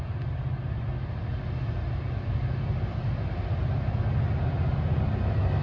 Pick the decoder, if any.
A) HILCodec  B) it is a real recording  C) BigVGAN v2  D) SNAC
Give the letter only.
B